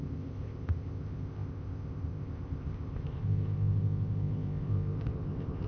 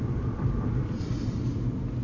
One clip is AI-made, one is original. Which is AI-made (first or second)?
first